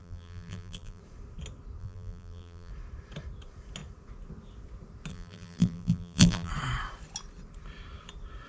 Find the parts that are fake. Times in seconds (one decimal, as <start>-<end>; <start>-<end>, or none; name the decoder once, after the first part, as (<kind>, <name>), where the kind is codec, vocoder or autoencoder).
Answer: 0.0-1.0 (vocoder, BigVGAN v2); 1.8-2.7; 5.1-6.5

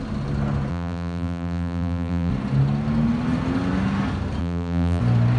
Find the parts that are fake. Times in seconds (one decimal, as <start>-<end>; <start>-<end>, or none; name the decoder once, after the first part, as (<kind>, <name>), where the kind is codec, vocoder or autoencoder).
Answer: 0.7-2.3 (vocoder, BigVGAN v2); 4.4-5.0

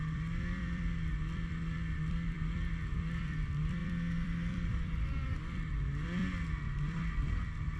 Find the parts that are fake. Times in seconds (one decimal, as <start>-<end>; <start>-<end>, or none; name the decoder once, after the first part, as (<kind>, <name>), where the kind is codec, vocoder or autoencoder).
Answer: 0.0-6.2 (vocoder, BigVGAN v2); 6.8-7.8

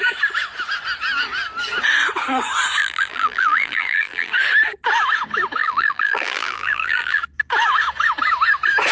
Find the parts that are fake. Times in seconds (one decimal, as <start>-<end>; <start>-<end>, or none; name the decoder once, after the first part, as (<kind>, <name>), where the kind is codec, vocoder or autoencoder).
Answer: 2.8-4.3 (vocoder, BigVGAN v2); 5.6-7.2

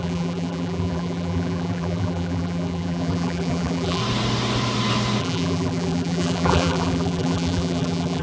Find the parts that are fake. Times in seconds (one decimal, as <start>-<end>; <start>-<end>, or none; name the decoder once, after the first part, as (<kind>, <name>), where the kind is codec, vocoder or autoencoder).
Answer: 0.0-4.0 (vocoder, BigVGAN v2); 5.2-8.2

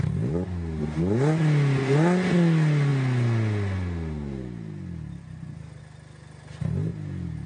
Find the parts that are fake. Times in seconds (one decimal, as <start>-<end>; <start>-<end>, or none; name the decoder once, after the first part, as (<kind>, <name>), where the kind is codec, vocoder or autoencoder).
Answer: none

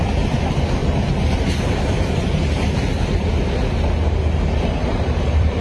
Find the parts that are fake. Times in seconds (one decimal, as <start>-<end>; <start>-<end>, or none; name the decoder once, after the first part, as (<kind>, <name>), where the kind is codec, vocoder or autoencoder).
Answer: 0.8-2.7 (vocoder, BigVGAN v2); 4.8-5.6